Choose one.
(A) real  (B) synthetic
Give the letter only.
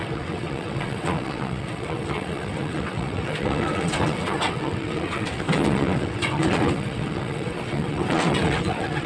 B